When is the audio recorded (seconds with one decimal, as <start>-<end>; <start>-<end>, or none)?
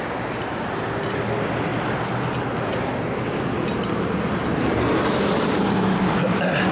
0.0-6.7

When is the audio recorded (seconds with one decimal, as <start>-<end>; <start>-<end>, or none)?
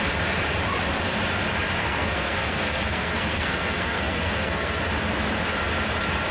0.0-1.8; 4.8-6.3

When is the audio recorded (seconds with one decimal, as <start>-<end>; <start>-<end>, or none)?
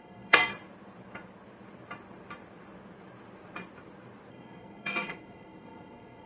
0.5-4.3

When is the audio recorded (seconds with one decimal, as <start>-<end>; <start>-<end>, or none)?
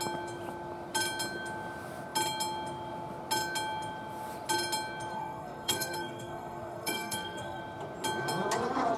0.0-5.1; 7.6-9.0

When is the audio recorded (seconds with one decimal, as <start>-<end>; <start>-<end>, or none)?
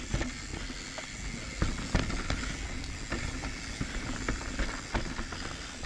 0.0-5.9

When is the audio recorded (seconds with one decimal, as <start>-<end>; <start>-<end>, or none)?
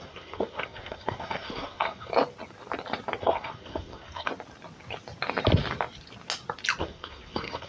2.1-3.2; 4.3-6.8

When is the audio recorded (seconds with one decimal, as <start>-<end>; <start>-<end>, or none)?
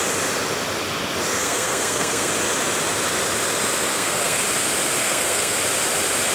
0.0-1.4; 2.3-3.9; 4.4-5.0; 5.6-6.3